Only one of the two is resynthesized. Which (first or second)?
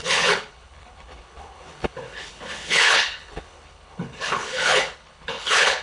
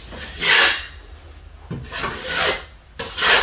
first